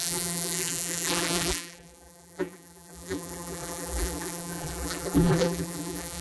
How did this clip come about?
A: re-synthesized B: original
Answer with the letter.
A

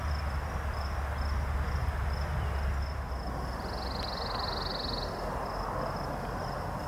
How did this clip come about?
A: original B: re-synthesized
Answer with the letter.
A